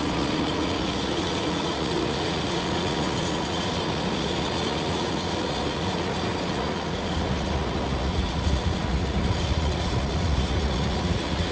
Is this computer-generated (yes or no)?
yes